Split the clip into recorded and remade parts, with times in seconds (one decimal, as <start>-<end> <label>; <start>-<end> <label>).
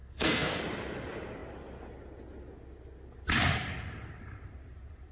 0.0-0.6 remade; 0.6-5.1 recorded